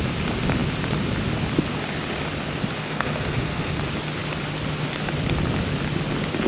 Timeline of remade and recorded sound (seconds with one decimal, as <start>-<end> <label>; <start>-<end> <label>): 0.0-2.8 recorded; 2.8-3.8 remade; 3.8-6.5 recorded